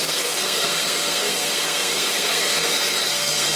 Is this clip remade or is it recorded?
remade